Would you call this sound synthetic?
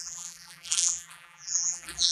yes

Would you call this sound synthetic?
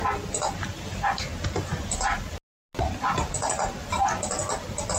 no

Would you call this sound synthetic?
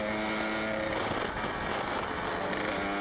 no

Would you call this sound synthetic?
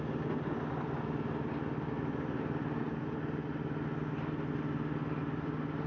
no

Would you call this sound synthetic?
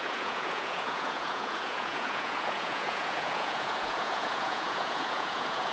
yes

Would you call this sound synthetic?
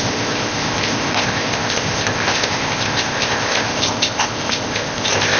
yes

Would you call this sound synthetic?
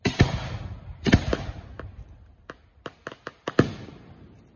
no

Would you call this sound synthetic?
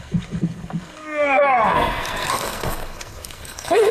yes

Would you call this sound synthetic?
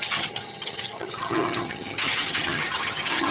yes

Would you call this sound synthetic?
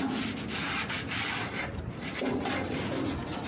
no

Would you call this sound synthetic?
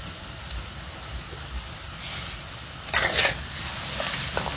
no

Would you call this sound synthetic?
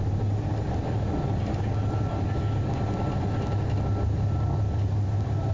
no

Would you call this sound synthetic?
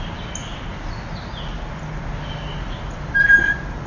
no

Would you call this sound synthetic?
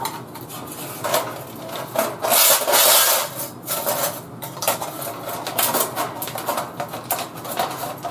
no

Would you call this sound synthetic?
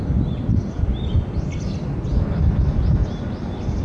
no